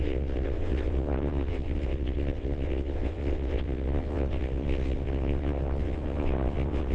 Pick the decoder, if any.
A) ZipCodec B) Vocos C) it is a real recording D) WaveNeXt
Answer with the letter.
D